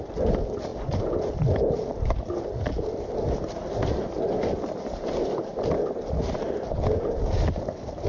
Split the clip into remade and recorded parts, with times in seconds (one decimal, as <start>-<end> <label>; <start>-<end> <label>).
0.0-0.7 remade; 0.7-4.3 recorded; 4.3-5.5 remade; 5.5-6.3 recorded; 6.3-8.1 remade